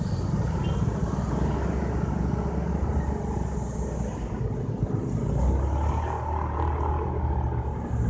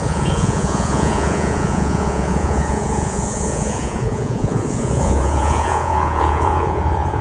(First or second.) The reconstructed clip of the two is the second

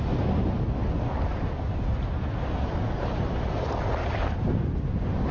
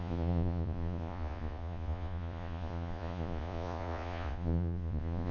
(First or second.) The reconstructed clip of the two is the second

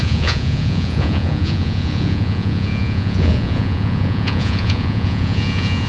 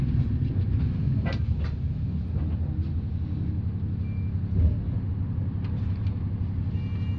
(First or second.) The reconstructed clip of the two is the first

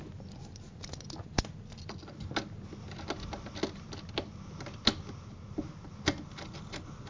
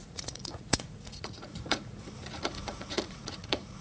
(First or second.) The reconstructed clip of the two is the second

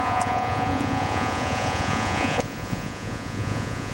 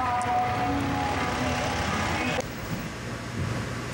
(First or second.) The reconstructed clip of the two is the first